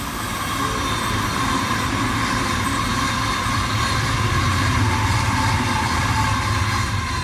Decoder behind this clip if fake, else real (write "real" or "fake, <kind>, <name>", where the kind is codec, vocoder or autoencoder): real